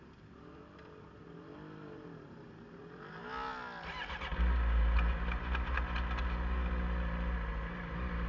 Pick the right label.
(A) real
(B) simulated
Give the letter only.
A